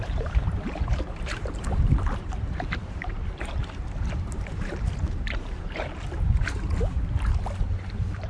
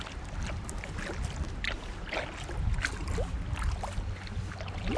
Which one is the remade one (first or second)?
first